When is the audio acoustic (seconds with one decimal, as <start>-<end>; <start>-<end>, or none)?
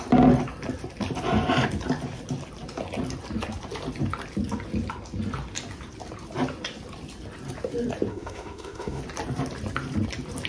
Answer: 0.0-8.1; 9.0-10.5